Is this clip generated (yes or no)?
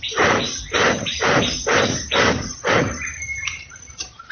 yes